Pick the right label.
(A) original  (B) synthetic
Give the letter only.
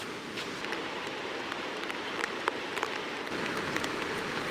B